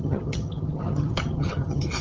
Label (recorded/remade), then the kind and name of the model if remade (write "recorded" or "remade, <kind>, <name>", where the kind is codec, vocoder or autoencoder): remade, vocoder, HiFi-GAN